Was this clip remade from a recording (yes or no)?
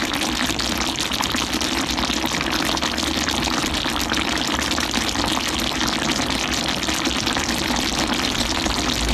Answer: no